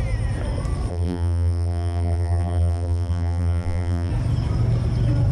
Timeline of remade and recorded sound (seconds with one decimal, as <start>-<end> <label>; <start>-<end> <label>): 0.0-0.9 recorded; 0.9-4.1 remade; 4.1-5.3 recorded